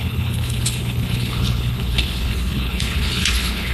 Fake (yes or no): yes